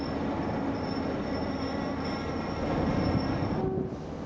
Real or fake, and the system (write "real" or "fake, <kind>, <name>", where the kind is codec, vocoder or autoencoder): real